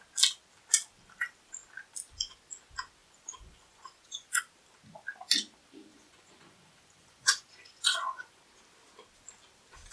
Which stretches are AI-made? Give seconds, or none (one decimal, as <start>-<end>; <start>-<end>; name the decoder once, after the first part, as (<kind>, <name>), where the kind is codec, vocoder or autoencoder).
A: 3.0-4.4 (vocoder, Vocos); 5.9-8.4